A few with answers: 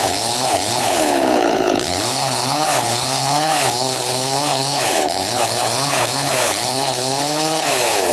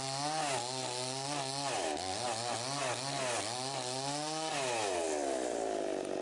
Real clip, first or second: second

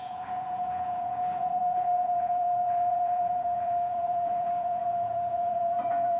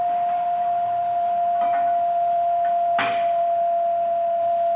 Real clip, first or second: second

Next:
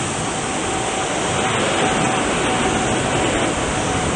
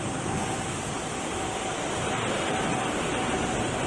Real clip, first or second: first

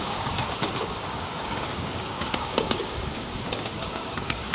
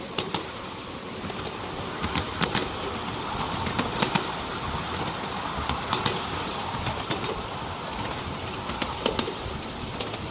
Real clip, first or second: second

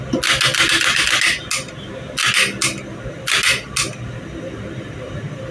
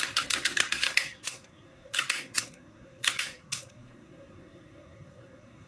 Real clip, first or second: first